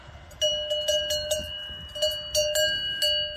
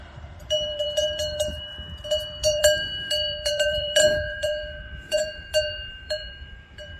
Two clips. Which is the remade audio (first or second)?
second